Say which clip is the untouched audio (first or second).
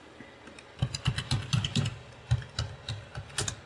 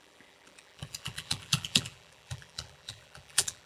first